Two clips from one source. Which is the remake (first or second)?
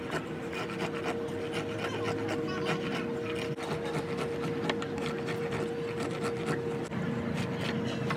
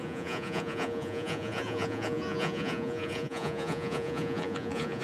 second